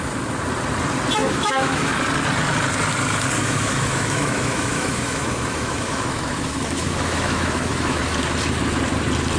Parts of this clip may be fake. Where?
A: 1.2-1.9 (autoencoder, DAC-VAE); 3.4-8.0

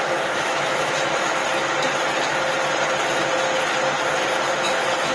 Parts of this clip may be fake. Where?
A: 0.0-1.4 (autoencoder, DAC-VAE); 4.5-5.1

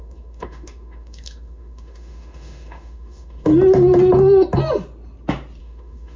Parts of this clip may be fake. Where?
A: 0.0-3.5 (autoencoder, DAC-VAE); 5.6-6.2

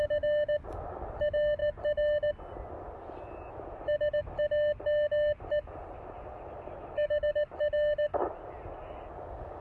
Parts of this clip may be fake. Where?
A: none

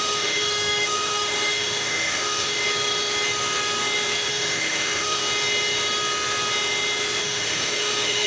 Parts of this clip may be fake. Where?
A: 0.0-2.6 (autoencoder, DAC-VAE); 4.3-5.2; 7.2-8.3

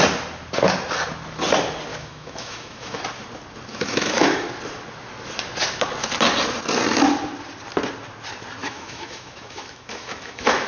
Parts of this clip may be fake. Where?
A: 1.9-3.0 (autoencoder, DAC-VAE); 3.7-4.5; 8.6-10.7

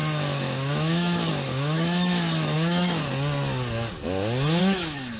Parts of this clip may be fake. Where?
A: 0.0-3.1 (autoencoder, DAC-VAE); 4.6-5.2